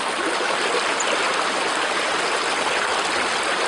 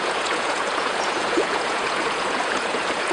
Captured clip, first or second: first